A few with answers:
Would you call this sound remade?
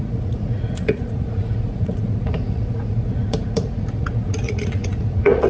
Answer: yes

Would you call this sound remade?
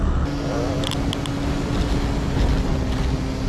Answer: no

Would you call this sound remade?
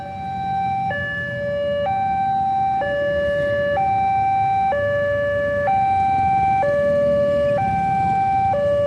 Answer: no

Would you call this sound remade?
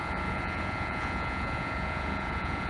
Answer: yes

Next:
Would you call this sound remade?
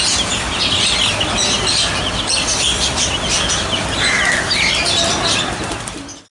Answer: no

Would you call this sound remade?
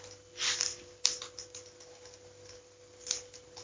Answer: no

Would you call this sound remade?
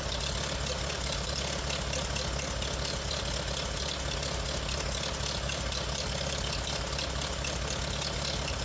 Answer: no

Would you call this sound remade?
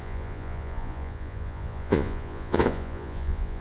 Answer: yes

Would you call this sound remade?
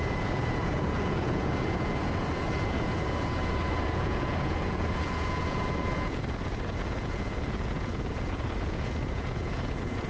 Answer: yes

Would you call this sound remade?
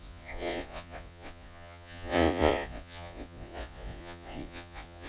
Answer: yes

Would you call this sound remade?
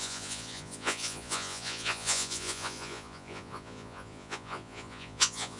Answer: yes